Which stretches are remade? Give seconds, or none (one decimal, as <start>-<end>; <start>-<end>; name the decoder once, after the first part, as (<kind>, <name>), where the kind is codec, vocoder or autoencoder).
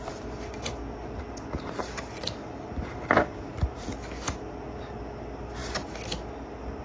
none